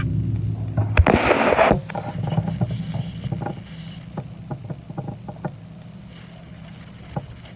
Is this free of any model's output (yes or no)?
yes